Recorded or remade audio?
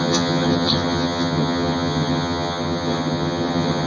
remade